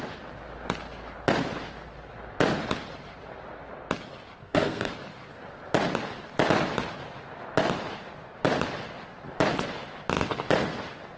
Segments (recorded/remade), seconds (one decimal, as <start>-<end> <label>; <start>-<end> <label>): 0.0-4.4 recorded; 4.4-4.9 remade; 4.9-11.2 recorded